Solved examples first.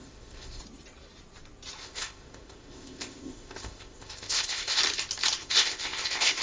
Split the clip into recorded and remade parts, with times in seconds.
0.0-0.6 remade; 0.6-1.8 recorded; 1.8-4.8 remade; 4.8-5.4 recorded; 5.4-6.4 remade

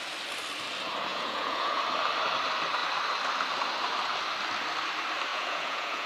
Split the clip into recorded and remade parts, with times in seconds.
0.0-1.1 recorded; 1.1-1.8 remade; 1.8-5.3 recorded; 5.3-6.1 remade

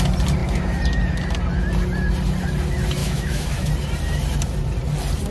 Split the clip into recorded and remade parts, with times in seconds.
0.0-3.0 recorded; 3.0-3.7 remade; 3.7-5.3 recorded

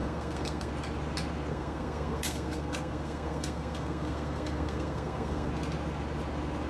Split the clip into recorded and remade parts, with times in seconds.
0.0-0.7 remade; 0.7-1.5 recorded; 1.5-5.5 remade; 5.5-6.7 recorded

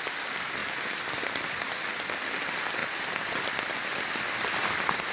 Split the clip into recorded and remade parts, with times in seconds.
0.0-5.1 recorded